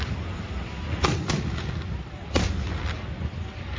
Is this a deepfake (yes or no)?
no